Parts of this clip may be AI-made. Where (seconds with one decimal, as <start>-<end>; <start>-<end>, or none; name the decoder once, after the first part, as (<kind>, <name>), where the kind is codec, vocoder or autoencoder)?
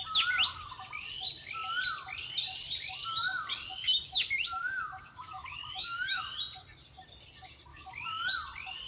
3.8-6.2 (autoencoder, DAC-VAE); 7.7-8.3